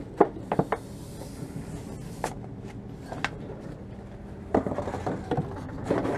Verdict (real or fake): fake